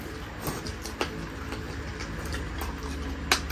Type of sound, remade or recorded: recorded